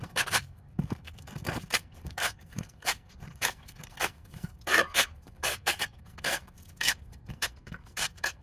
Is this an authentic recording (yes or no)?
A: no